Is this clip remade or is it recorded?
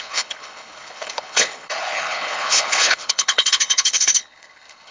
remade